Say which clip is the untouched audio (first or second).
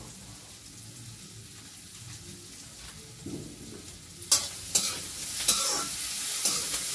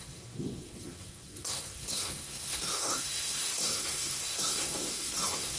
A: first